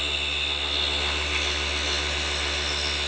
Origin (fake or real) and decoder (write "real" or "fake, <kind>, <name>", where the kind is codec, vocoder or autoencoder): real